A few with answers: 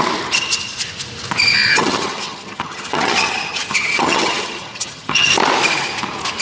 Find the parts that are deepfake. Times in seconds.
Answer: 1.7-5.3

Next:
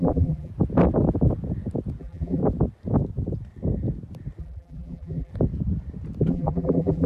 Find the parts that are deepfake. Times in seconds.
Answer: 0.0-0.5; 2.0-2.4; 4.4-5.3; 6.3-7.1

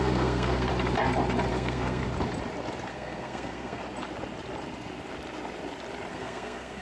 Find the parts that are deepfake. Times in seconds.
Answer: 0.0-0.7; 1.5-2.0; 2.9-3.8; 6.1-6.8

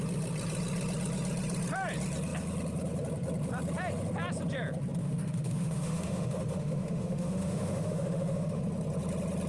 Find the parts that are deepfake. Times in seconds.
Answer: 5.0-8.6

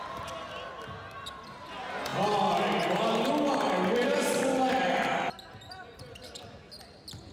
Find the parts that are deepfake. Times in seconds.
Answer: none

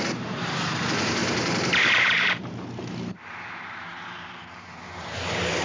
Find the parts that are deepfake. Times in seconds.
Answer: 0.0-5.6

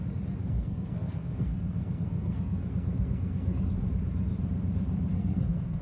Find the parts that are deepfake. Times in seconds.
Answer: 0.4-3.7; 5.1-5.8